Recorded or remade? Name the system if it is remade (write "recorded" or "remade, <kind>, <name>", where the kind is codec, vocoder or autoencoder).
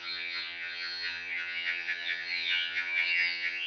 remade, vocoder, HiFi-GAN